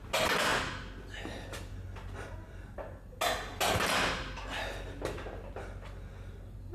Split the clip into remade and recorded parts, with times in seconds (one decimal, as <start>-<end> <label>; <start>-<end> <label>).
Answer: 0.0-6.7 recorded